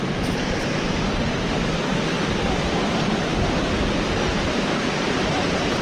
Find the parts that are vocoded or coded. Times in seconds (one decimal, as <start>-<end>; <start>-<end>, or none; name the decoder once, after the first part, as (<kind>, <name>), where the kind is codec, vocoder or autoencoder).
0.0-3.3 (vocoder, BigVGAN v2); 4.2-5.8